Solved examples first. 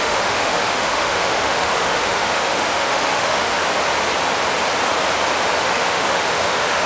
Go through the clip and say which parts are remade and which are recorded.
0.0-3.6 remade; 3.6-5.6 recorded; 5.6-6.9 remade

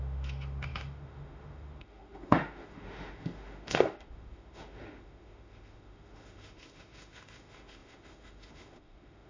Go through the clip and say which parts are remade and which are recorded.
0.0-9.3 remade

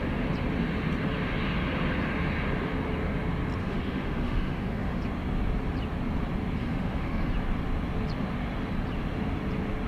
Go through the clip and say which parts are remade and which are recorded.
0.0-3.6 recorded; 3.6-5.0 remade; 5.0-6.6 recorded; 6.6-7.3 remade; 7.3-9.9 recorded

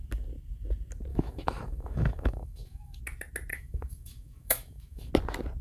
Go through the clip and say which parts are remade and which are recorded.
0.0-1.1 recorded; 1.1-3.0 remade; 3.0-3.5 recorded; 3.5-5.1 remade; 5.1-5.6 recorded